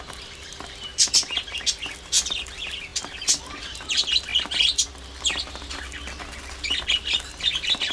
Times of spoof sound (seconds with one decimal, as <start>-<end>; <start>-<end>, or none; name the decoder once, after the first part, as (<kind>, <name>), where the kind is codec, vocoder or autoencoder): none

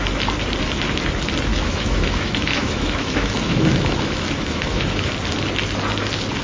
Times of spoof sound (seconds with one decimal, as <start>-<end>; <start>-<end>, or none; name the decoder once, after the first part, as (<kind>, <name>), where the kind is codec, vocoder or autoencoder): 1.5-5.1 (autoencoder, DAC-VAE)

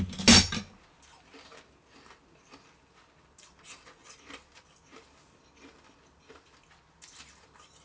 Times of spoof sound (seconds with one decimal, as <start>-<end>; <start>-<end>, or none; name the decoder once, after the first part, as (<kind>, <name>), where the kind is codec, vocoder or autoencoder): none

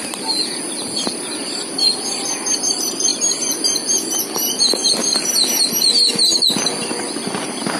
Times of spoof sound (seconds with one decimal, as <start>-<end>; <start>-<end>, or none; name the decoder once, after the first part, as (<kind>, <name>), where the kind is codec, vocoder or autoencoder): none

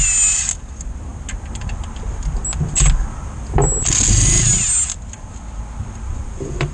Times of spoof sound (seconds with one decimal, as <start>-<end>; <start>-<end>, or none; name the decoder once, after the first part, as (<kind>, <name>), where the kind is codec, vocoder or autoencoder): none

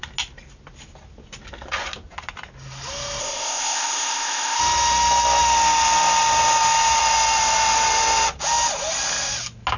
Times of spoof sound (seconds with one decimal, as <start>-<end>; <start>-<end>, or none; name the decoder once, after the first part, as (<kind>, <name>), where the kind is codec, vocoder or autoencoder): 3.2-4.6 (codec, ZipCodec)

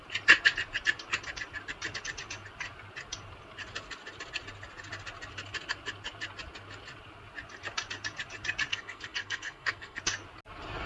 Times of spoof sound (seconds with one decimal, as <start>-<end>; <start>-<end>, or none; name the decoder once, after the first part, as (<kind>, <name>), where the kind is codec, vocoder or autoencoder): 8.7-10.0 (codec, SNAC)

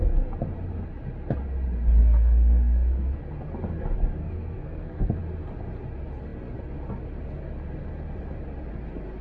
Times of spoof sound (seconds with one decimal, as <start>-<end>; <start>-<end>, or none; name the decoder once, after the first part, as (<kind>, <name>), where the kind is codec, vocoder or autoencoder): 2.0-3.2 (codec, SNAC); 4.2-5.2